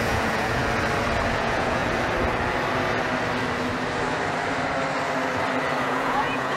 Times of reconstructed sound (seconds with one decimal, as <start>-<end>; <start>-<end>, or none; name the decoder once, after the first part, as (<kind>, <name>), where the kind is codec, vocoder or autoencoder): 0.0-0.6 (vocoder, Vocos); 1.3-1.8; 5.8-6.6